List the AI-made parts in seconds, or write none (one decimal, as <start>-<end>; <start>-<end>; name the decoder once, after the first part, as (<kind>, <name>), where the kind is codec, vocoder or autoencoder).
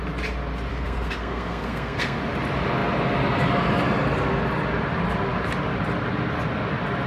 0.7-2.2 (codec, SNAC)